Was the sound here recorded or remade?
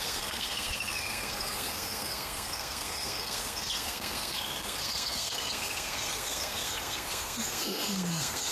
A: remade